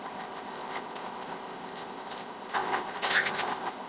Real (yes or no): no